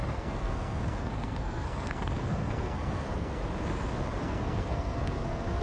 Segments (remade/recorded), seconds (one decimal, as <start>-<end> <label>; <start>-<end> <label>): 0.0-3.4 remade; 3.4-4.2 recorded; 4.2-5.6 remade